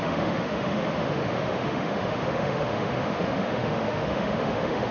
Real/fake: fake